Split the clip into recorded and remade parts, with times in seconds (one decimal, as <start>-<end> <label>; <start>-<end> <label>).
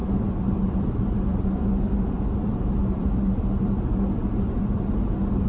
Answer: 0.0-0.9 remade; 0.9-1.3 recorded; 1.3-4.6 remade; 4.6-5.5 recorded